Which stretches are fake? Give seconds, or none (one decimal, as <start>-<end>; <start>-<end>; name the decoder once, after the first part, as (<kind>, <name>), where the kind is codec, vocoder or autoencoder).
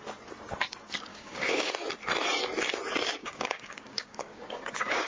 1.1-1.7 (codec, DAC); 3.2-5.1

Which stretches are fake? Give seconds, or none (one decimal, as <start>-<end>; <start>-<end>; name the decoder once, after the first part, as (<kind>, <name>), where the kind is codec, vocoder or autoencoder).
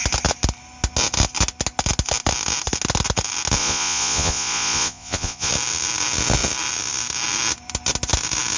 3.6-5.5 (vocoder, Vocos)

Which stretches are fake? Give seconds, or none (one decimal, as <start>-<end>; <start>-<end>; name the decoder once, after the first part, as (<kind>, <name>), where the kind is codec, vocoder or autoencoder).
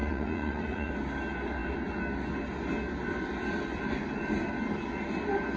0.0-0.9 (vocoder, Vocos)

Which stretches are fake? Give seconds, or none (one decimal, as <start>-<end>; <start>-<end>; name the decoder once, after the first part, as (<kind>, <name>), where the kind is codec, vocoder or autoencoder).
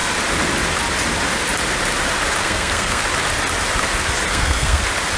2.4-3.0 (codec, SNAC); 4.3-4.8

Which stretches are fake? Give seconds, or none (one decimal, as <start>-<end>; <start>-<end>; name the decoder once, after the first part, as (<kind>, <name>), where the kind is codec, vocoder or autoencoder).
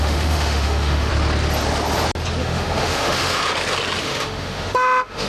0.0-1.1 (autoencoder, DAC-VAE); 2.4-3.4; 4.0-5.3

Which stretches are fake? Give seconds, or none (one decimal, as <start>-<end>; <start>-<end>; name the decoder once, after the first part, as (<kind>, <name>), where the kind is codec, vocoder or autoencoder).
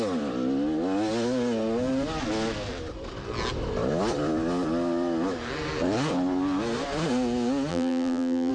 7.7-8.5 (vocoder, BigVGAN v2)